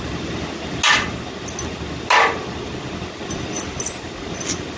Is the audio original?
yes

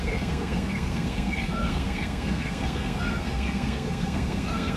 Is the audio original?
no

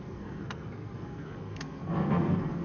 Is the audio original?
no